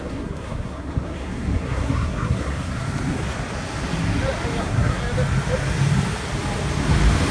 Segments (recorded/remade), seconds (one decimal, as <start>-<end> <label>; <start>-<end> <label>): 0.0-2.8 remade; 2.8-4.6 recorded; 4.6-5.0 remade; 5.0-7.3 recorded